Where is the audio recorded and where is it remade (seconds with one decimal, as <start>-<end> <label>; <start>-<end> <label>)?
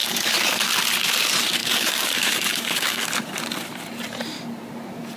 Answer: 0.0-0.7 remade; 0.7-1.6 recorded; 1.6-3.1 remade; 3.1-5.2 recorded